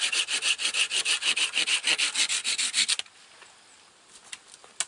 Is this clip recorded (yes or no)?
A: yes